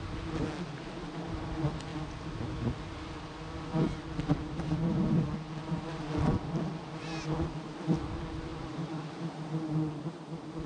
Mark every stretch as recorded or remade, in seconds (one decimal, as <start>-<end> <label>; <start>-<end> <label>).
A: 0.0-1.9 recorded; 1.9-6.7 remade; 6.7-8.5 recorded; 8.5-9.2 remade; 9.2-10.7 recorded